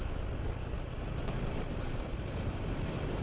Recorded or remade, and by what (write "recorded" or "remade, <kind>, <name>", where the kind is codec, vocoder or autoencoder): recorded